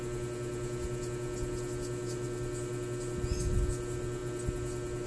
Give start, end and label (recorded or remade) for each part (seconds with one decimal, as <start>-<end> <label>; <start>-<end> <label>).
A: 0.0-5.1 recorded